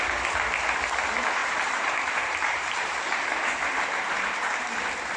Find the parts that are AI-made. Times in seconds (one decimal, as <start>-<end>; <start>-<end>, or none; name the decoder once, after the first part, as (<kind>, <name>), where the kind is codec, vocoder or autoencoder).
1.4-4.5 (vocoder, BigVGAN v2)